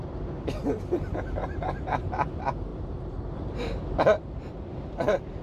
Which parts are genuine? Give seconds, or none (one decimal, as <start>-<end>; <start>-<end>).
0.0-1.1; 2.0-2.7; 3.8-5.4